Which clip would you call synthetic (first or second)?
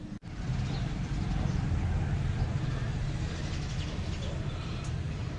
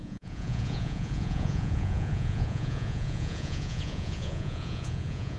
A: second